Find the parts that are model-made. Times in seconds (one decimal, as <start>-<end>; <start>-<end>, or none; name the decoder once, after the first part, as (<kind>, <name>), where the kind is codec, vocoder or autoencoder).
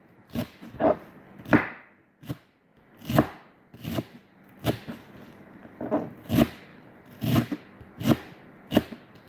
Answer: 6.7-8.5 (vocoder, BigVGAN v2)